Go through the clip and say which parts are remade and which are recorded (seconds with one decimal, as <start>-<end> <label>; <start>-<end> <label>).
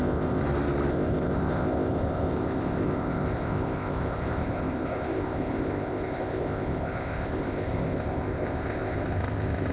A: 0.0-0.4 remade; 0.4-0.9 recorded; 0.9-9.7 remade